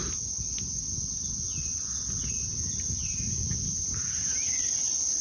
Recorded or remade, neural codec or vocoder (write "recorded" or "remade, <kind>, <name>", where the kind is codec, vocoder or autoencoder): recorded